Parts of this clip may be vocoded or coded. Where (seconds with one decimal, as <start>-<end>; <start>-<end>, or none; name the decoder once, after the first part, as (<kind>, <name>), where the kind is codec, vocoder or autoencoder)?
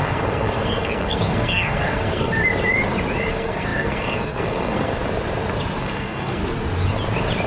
0.0-2.4 (codec, SNAC); 3.3-5.0; 5.8-6.4